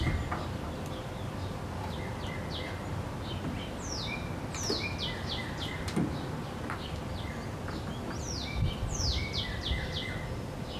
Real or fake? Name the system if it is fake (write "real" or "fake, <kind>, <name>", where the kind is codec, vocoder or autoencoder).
real